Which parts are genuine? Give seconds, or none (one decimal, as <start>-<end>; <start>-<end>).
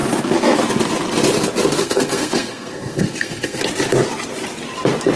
0.0-1.8; 3.6-5.2